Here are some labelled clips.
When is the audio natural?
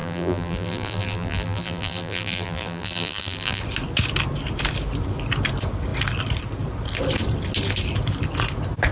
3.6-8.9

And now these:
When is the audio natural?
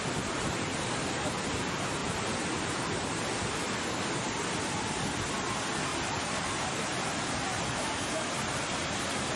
0.0-2.0; 3.5-5.9; 6.8-9.4